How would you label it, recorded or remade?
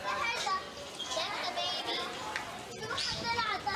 recorded